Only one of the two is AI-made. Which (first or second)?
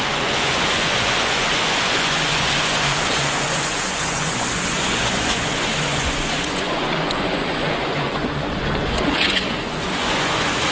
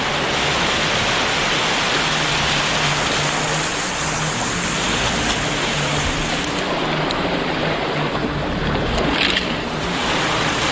first